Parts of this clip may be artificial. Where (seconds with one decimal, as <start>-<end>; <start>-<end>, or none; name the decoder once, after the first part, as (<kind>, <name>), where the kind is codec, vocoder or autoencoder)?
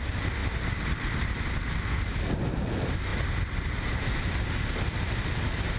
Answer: none